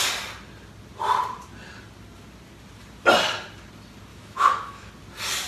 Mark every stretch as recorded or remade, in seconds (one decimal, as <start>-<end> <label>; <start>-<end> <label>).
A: 0.0-4.1 recorded; 4.1-4.9 remade; 4.9-5.5 recorded